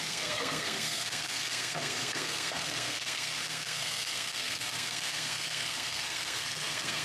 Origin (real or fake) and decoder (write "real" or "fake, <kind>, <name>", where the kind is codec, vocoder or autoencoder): fake, codec, SNAC